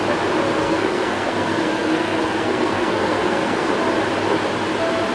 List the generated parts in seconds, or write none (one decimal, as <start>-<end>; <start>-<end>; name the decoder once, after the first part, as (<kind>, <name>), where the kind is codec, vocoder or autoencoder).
0.6-3.7 (codec, SNAC)